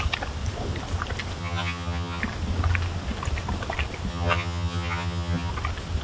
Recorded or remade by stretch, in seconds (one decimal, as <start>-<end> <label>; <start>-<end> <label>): 0.0-1.4 recorded; 1.4-2.2 remade; 2.2-4.1 recorded; 4.1-5.5 remade; 5.5-6.0 recorded